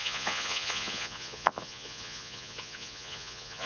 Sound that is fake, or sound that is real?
fake